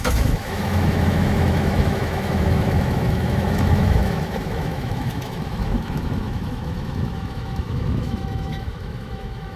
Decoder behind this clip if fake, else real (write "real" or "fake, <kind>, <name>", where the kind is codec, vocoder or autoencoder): fake, autoencoder, DAC-VAE